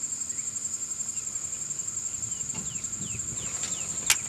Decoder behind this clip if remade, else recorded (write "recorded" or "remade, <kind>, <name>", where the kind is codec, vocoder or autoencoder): recorded